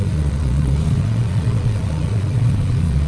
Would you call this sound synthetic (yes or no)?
yes